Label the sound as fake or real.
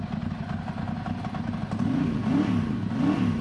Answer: real